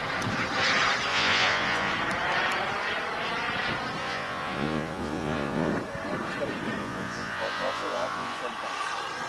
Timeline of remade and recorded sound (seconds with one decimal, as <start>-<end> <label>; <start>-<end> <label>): 0.0-1.1 recorded; 1.1-1.9 remade; 1.9-4.0 recorded; 4.0-5.7 remade; 5.7-6.8 recorded; 6.8-8.4 remade; 8.4-9.3 recorded